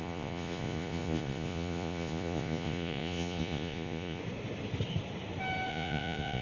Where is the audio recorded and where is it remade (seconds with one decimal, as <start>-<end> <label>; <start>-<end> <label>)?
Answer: 0.0-4.2 remade; 4.2-5.7 recorded; 5.7-6.4 remade